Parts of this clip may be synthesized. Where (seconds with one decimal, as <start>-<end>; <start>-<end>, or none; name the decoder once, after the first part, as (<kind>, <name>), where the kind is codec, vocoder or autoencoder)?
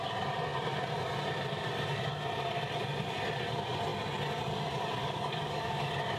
5.0-5.8 (codec, DAC)